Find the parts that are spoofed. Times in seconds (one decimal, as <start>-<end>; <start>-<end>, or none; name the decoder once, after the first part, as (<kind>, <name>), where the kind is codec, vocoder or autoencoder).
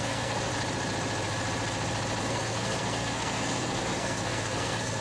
0.0-0.5 (codec, SNAC); 2.2-5.0